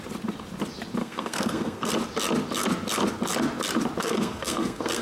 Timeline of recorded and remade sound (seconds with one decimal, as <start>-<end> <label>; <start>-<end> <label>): 0.0-1.0 recorded; 1.0-1.9 remade; 1.9-4.0 recorded; 4.0-5.0 remade